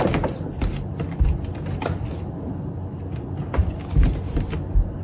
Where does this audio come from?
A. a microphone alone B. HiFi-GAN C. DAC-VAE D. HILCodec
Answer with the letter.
A